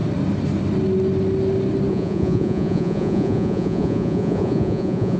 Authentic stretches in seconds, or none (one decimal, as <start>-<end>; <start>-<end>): 0.0-1.9